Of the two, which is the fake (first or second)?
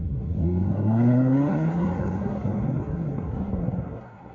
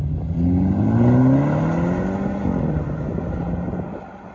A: first